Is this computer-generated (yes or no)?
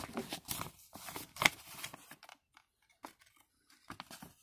no